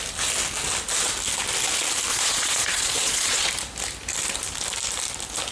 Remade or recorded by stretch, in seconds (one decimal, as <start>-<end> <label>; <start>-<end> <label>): 0.0-2.1 recorded; 2.1-3.5 remade; 3.5-5.5 recorded